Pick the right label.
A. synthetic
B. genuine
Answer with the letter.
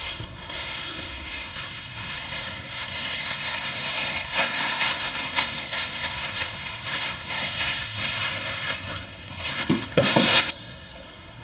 A